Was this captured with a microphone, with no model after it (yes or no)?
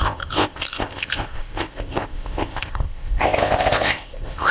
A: no